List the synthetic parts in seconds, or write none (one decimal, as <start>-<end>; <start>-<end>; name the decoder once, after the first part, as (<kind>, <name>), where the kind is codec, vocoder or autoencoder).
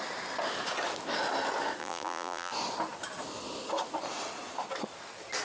1.8-2.5 (vocoder, BigVGAN v2)